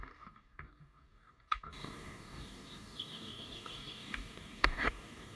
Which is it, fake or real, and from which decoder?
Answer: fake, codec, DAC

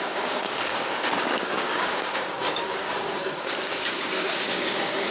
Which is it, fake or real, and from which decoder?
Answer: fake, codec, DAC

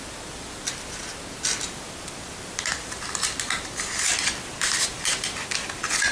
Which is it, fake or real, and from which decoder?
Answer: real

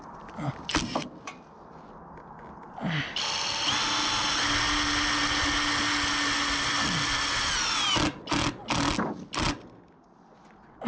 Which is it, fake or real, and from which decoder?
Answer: real